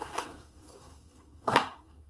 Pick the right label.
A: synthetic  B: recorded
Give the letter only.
A